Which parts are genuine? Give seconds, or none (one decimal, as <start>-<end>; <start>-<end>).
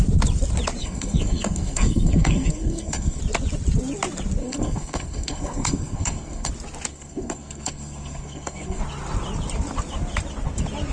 0.0-0.8; 3.2-4.4; 6.5-6.9; 8.8-10.9